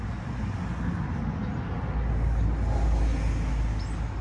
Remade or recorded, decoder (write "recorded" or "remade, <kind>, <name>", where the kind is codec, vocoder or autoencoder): recorded